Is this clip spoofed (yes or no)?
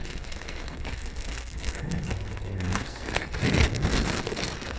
yes